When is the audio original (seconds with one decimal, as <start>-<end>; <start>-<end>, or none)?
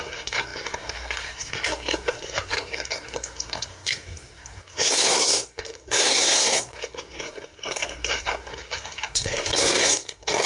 none